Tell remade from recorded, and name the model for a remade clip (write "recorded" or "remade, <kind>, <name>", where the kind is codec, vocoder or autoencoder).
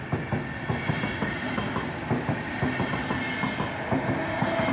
recorded